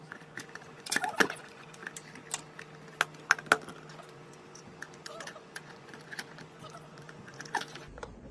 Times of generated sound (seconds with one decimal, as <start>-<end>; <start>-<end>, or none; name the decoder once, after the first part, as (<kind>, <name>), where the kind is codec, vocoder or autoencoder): 0.0-1.8 (vocoder, Vocos); 4.0-8.3